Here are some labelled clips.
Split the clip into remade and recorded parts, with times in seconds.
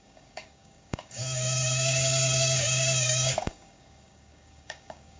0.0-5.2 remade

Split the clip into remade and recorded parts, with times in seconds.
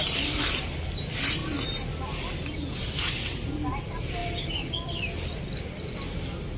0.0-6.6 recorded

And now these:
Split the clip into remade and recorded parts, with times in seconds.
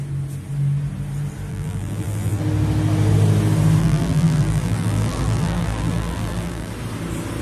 0.0-1.5 recorded; 1.5-2.4 remade; 2.4-3.8 recorded; 3.8-6.7 remade; 6.7-7.4 recorded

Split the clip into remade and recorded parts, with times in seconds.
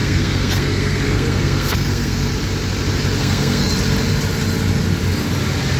0.0-2.3 remade; 2.3-3.2 recorded; 3.2-3.7 remade; 3.7-5.8 recorded